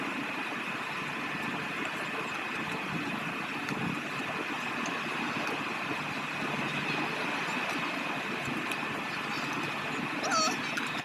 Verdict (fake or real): real